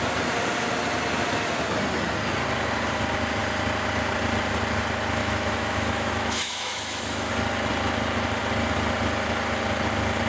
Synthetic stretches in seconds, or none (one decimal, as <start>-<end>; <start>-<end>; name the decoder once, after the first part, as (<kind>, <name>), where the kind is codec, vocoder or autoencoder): 5.2-7.3 (autoencoder, DAC-VAE)